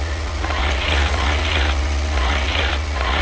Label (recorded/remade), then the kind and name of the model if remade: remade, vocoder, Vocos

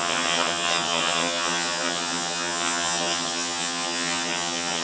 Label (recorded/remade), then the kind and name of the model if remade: remade, vocoder, HiFi-GAN